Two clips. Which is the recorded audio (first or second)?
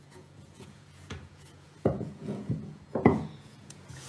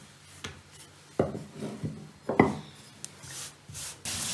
second